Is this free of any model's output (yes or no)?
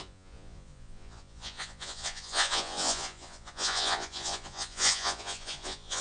no